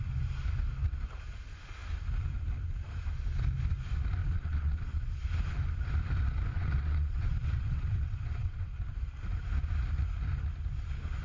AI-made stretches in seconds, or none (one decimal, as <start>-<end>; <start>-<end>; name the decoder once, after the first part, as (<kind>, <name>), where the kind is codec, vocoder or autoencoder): 4.2-5.2 (vocoder, WaveNeXt); 6.5-8.7